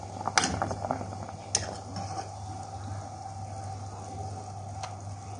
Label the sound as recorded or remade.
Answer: recorded